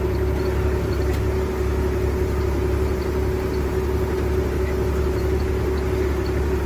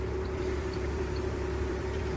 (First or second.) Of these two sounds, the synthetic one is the second